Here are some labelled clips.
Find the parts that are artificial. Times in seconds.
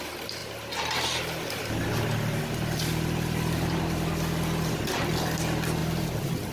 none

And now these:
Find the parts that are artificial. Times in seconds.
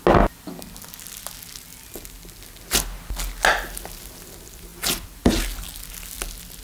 none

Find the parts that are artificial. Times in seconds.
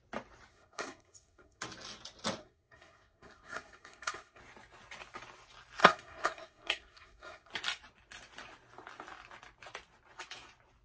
0.5-1.6 (codec, SNAC); 2.4-4.4; 5.8-7.5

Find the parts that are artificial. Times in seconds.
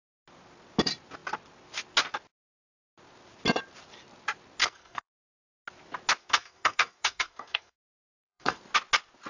4.6-5.1 (codec, SNAC); 6.2-8.6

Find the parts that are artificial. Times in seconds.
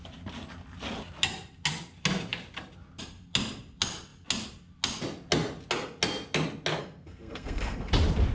6.8-7.9 (codec, SNAC)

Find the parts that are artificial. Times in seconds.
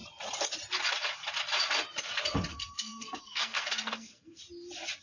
2.5-4.4 (codec, SNAC)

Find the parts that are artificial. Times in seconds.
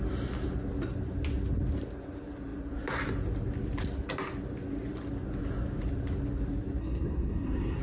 6.8-7.8 (codec, SNAC)